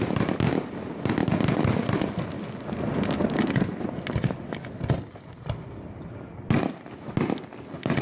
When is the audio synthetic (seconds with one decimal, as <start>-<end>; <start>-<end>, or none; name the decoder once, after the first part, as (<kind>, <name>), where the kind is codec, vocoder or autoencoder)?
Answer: none